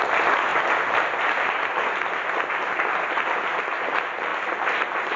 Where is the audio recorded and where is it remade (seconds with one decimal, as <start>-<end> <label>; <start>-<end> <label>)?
0.0-5.2 recorded

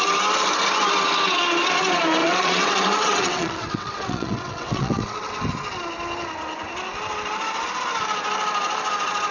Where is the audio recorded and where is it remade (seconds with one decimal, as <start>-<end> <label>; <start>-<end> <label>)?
0.0-2.2 recorded; 2.2-5.3 remade; 5.3-9.3 recorded

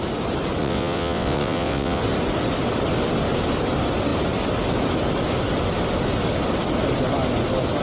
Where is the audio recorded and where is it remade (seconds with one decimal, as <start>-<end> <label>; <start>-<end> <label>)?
0.0-0.6 recorded; 0.6-2.0 remade; 2.0-7.8 recorded

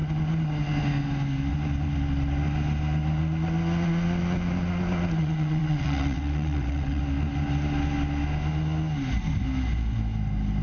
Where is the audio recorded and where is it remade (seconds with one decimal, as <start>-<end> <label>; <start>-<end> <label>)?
0.0-5.2 recorded; 5.2-7.0 remade; 7.0-10.6 recorded

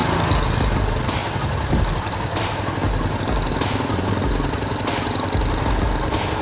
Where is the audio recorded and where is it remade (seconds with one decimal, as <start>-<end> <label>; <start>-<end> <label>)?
0.0-6.4 recorded

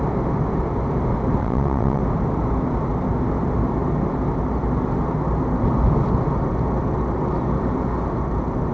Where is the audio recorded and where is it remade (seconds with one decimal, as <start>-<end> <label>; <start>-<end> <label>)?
0.0-1.4 recorded; 1.4-2.0 remade; 2.0-8.7 recorded

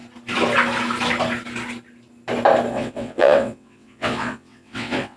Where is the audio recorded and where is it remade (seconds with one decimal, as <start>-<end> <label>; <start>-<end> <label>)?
0.0-2.7 recorded; 2.7-5.2 remade

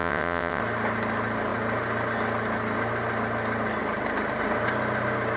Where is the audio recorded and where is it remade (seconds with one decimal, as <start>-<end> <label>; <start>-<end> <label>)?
0.0-0.6 remade; 0.6-5.4 recorded